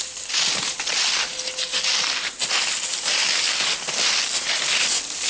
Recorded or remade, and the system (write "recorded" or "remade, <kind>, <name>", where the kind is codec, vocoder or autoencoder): recorded